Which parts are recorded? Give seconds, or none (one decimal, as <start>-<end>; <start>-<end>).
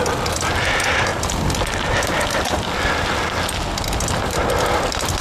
0.0-5.2